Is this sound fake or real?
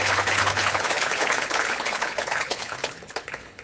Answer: fake